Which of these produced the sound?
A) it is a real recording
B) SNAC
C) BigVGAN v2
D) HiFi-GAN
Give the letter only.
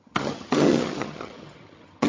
D